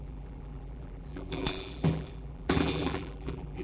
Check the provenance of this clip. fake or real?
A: fake